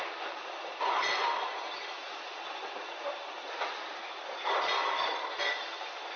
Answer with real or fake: real